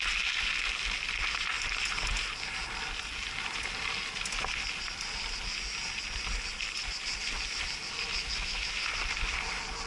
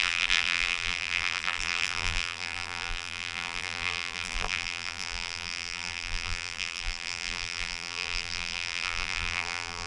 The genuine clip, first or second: first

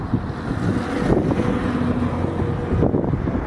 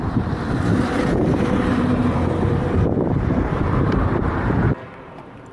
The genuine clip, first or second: first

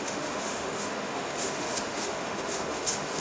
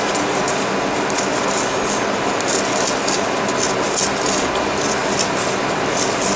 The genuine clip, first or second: second